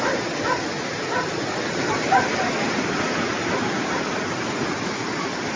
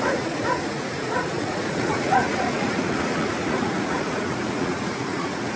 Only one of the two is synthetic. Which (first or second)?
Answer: second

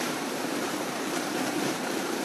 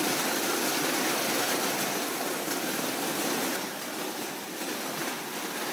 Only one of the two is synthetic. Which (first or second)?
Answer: first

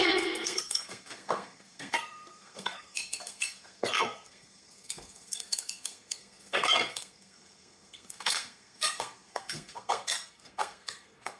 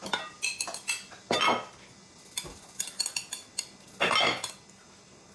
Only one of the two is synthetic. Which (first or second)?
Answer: first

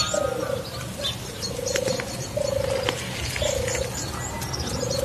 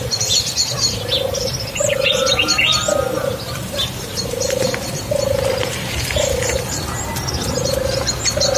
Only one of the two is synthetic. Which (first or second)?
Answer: second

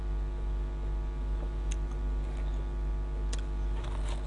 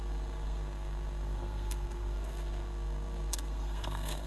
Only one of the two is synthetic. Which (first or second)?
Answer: second